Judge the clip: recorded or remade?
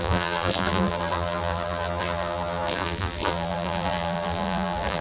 remade